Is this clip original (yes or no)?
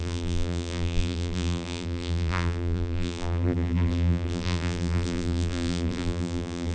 no